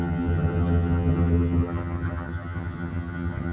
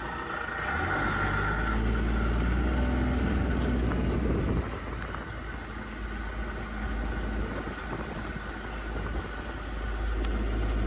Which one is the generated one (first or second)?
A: first